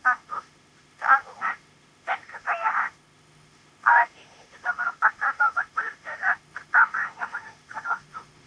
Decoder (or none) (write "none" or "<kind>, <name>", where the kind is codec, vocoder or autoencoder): autoencoder, DAC-VAE